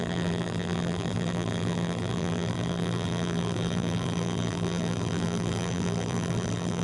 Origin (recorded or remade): remade